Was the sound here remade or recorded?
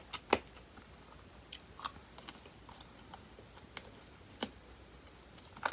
recorded